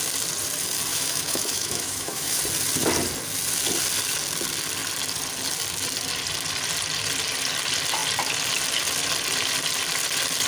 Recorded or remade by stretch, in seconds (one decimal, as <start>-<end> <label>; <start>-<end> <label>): 0.0-0.9 recorded; 0.9-2.4 remade; 2.4-10.5 recorded